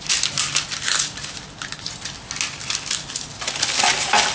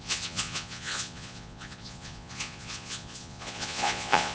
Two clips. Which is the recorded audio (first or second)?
first